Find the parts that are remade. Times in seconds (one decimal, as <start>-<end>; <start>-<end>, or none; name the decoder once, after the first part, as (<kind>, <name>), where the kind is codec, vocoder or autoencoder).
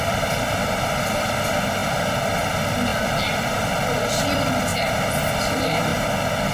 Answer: 0.0-2.9 (vocoder, BigVGAN v2); 3.4-4.7; 5.2-5.9